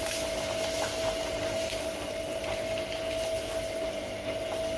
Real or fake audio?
real